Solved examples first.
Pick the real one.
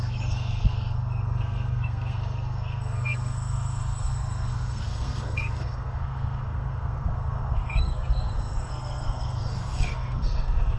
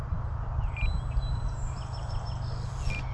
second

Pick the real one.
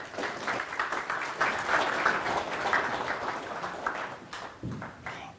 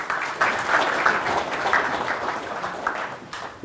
first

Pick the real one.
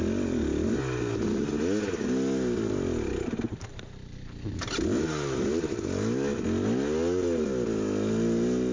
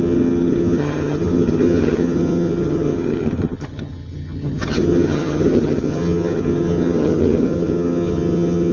first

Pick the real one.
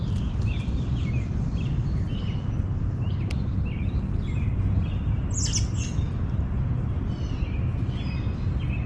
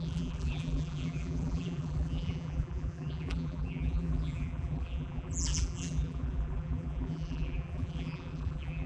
first